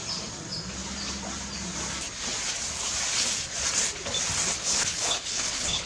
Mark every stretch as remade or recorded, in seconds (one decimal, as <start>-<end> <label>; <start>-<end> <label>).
0.0-4.6 recorded; 4.6-5.9 remade